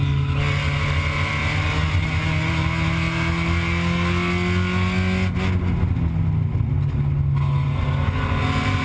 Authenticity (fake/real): real